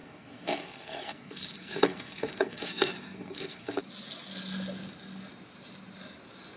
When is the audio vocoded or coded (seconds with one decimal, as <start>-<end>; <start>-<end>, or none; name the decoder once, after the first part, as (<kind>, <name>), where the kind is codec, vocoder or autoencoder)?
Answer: 0.0-3.8 (codec, SNAC)